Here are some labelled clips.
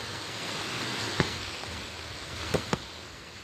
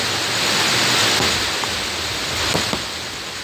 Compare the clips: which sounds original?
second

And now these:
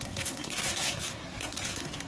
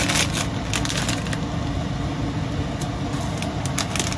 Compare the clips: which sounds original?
second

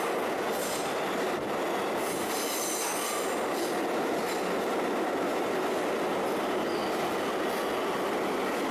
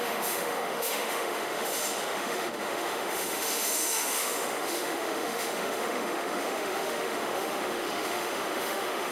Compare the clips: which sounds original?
first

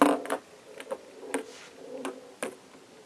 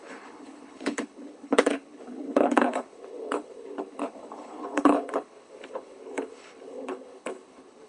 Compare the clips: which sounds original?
first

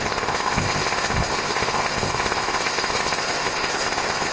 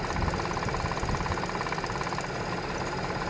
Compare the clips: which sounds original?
second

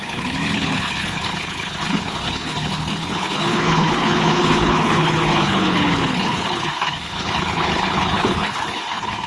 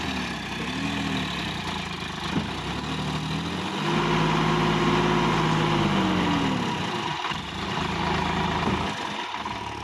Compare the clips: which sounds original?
second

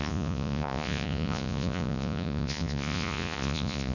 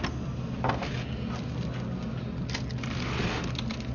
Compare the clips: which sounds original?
second